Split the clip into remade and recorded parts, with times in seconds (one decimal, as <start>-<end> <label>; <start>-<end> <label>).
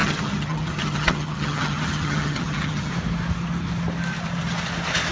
0.0-2.9 remade; 2.9-5.1 recorded